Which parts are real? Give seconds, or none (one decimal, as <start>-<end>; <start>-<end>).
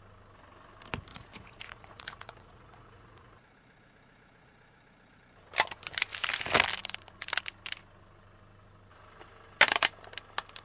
0.0-1.1; 5.2-10.6